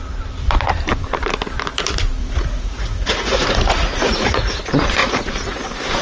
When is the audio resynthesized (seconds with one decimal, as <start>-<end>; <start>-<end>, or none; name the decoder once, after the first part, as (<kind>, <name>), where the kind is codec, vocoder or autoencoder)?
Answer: 2.2-4.6 (vocoder, Vocos); 5.0-5.6